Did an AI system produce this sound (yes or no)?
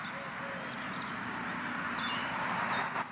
no